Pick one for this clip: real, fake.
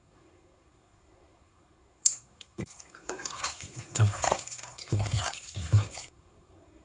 fake